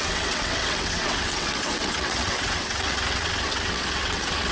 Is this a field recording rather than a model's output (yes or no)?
no